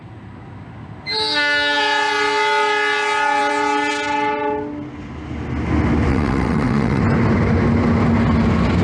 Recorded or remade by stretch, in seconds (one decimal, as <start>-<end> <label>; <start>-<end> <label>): 0.0-6.1 recorded; 6.1-7.0 remade; 7.0-8.8 recorded